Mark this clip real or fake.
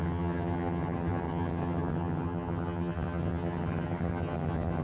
fake